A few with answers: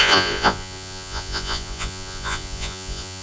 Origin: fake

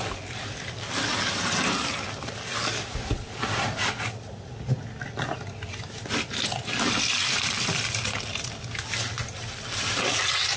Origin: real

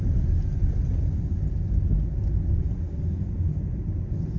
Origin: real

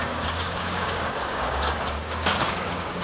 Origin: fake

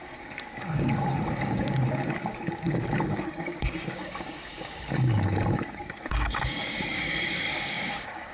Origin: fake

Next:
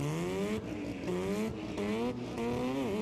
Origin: real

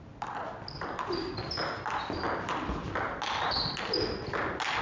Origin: real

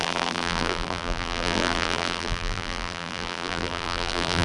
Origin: fake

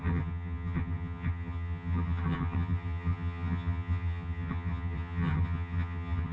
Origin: fake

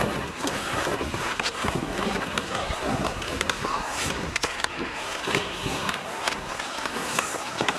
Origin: fake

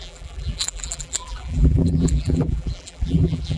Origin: fake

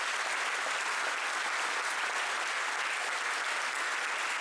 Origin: real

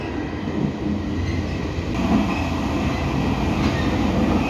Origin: real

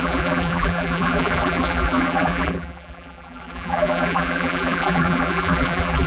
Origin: fake